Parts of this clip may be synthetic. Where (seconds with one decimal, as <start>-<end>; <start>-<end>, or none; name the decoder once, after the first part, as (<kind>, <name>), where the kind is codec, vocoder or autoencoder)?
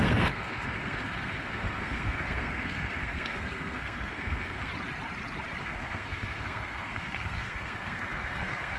0.0-4.7 (codec, SNAC); 5.6-8.8